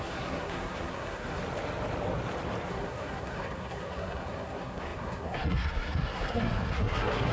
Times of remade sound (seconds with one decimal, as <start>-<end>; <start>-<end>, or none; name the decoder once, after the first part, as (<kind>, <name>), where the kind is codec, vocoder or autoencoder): 0.0-1.4 (codec, SNAC); 2.7-7.3